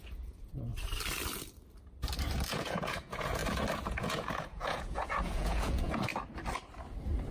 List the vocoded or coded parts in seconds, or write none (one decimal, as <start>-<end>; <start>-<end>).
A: 0.0-0.7; 2.5-3.4; 3.9-6.1